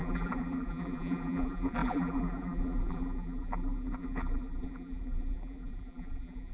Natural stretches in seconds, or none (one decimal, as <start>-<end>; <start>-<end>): none